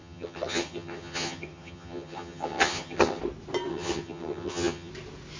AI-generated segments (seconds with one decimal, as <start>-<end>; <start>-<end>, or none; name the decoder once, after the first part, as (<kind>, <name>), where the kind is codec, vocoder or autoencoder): 0.0-3.2 (vocoder, HiFi-GAN); 3.7-4.9